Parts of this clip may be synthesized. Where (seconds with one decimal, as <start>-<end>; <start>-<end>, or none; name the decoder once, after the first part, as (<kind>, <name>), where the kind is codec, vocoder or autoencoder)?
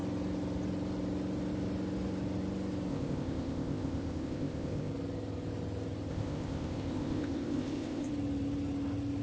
2.9-4.9 (codec, ZipCodec); 6.1-8.1